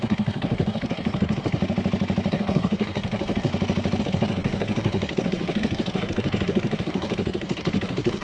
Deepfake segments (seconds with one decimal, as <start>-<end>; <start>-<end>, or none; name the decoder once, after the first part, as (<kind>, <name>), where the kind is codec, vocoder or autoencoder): 0.0-1.6 (codec, SNAC); 2.3-3.5; 4.0-8.2